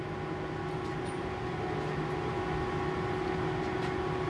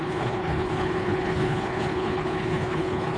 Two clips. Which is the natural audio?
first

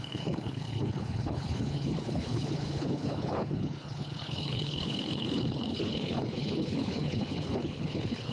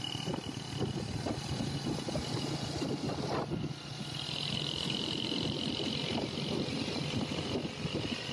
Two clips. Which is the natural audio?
second